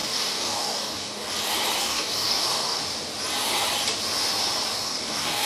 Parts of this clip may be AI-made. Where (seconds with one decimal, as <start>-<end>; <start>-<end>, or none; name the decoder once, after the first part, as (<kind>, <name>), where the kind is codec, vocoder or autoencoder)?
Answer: 0.0-1.3 (codec, DAC); 1.8-2.8; 4.7-5.5